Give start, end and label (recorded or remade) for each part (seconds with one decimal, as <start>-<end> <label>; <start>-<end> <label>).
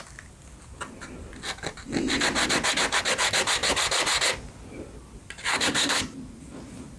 0.0-5.5 recorded; 5.5-6.0 remade; 6.0-7.0 recorded